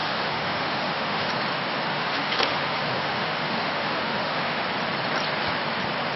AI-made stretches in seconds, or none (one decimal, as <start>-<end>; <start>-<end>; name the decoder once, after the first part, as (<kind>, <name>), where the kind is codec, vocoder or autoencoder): 0.0-1.3 (autoencoder, DAC-VAE); 1.9-4.6